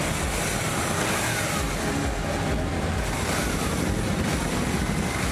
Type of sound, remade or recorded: recorded